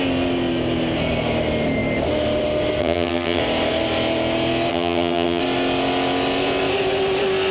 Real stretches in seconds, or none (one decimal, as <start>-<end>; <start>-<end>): 0.0-2.8; 3.4-4.7; 5.4-7.5